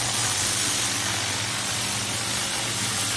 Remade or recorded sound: recorded